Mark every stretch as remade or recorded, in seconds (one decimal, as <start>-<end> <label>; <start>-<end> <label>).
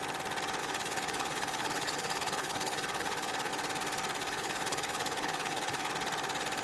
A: 0.0-0.6 recorded; 0.6-3.5 remade; 3.5-4.2 recorded; 4.2-5.9 remade; 5.9-6.6 recorded